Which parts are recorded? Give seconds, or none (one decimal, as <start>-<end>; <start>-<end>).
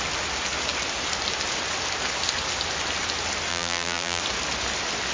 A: 0.0-3.5; 4.2-5.1